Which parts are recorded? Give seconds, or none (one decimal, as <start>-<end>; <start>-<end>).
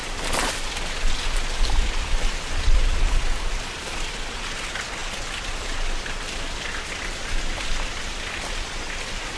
0.0-9.4